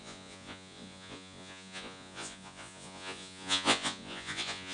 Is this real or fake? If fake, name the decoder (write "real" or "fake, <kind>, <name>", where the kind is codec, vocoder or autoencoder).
fake, vocoder, Vocos